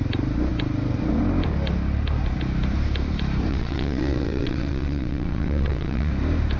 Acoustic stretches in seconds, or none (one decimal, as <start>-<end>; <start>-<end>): 0.0-3.5; 6.1-6.6